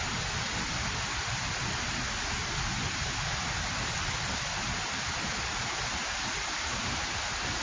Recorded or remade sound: recorded